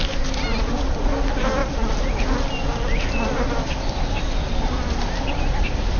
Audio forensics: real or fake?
real